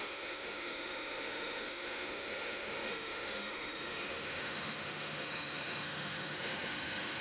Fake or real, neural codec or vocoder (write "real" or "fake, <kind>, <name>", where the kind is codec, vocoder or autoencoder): fake, autoencoder, DAC-VAE